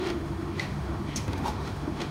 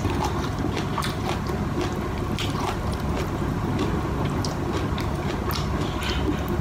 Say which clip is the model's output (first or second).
first